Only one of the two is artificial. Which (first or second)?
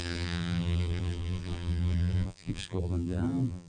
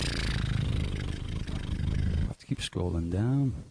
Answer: first